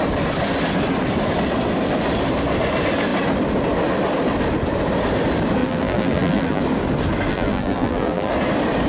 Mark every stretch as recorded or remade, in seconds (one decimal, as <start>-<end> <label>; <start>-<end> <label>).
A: 0.0-5.6 recorded; 5.6-6.6 remade; 6.6-7.3 recorded; 7.3-8.3 remade; 8.3-8.9 recorded